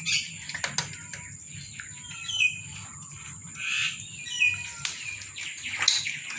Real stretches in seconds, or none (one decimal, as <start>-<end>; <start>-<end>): 0.0-6.4